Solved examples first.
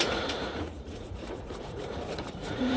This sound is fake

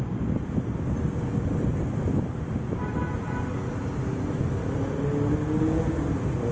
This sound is real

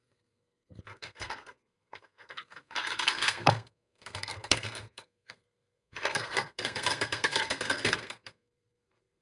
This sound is fake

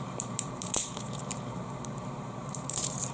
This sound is fake